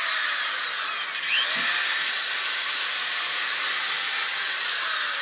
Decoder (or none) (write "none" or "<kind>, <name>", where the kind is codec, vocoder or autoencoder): none